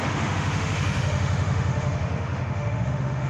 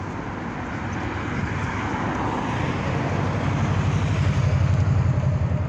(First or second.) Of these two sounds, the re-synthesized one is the first